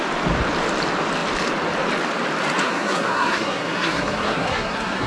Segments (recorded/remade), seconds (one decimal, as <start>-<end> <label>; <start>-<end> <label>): 0.0-2.6 recorded; 2.6-5.1 remade